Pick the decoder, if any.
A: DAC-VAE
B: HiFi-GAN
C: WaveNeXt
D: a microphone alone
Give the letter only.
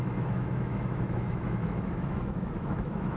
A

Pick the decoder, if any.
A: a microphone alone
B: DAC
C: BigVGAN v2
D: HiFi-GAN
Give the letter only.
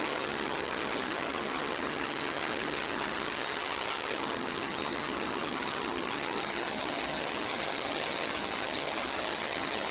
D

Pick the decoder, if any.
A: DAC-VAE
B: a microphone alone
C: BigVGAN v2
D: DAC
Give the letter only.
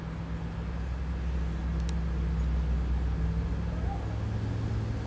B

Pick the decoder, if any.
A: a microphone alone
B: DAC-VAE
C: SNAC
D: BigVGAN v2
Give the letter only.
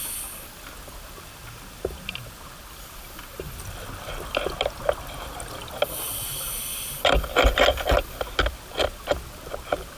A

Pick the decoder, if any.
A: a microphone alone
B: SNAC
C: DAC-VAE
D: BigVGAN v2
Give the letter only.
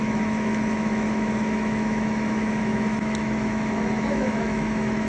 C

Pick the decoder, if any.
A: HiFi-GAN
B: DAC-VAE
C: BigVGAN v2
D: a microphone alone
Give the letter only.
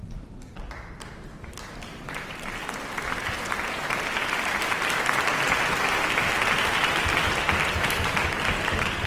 D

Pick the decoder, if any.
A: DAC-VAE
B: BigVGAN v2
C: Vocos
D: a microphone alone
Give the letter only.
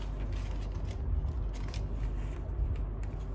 D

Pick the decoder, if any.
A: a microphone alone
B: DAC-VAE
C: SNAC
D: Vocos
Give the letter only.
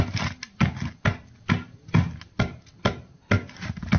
A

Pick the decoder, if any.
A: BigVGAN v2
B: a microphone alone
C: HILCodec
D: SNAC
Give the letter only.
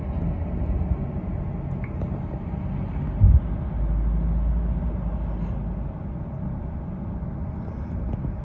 B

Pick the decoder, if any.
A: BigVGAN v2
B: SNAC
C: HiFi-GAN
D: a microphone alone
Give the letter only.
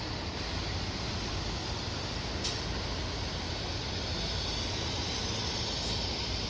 D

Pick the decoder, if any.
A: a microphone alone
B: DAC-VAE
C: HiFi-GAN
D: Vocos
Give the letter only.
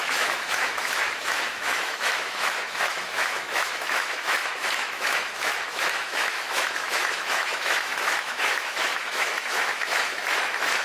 B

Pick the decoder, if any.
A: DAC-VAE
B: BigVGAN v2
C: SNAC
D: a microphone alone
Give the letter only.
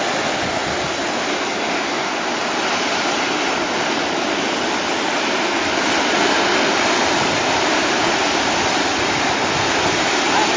D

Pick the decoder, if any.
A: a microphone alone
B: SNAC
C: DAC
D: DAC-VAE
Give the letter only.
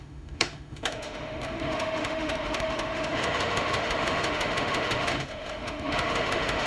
D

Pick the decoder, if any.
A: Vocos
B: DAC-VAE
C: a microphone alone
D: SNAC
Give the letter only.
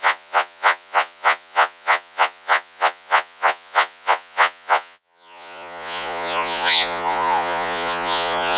A